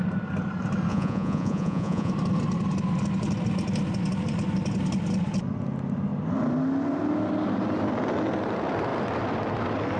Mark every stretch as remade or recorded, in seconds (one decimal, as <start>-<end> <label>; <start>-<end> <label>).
0.0-0.9 recorded; 0.9-2.1 remade; 2.1-10.0 recorded